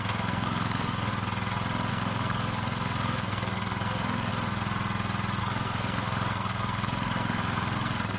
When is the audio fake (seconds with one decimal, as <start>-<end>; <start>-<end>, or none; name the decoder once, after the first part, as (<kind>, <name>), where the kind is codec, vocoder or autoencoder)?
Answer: 0.0-1.1 (codec, SNAC); 1.9-4.3; 5.4-8.2